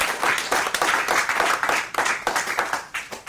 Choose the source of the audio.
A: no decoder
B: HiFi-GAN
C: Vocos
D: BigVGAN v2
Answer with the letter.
D